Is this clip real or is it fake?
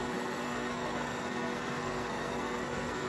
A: fake